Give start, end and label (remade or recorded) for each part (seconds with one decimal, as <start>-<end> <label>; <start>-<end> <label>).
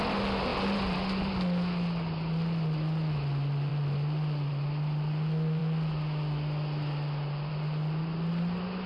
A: 0.0-8.9 recorded